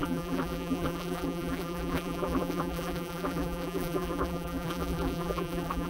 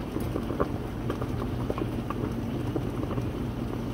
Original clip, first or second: second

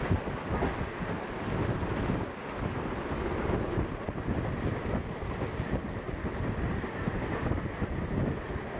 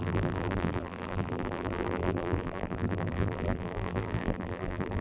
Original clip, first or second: first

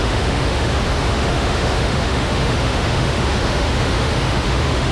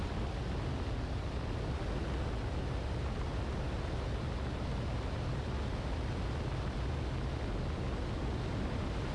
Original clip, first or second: second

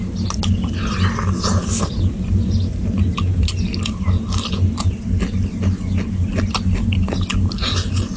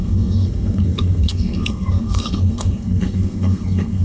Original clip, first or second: first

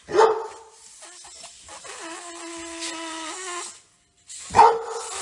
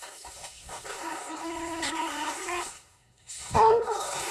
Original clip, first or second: first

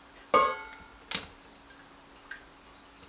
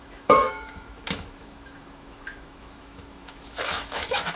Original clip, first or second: first